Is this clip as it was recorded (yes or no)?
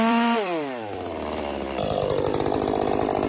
no